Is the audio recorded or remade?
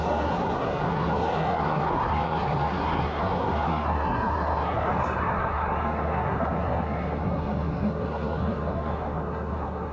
remade